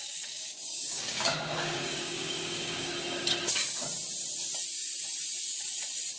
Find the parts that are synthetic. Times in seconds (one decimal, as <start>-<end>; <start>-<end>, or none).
0.0-2.9